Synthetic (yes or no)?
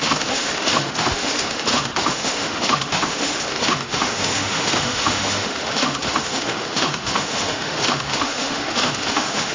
yes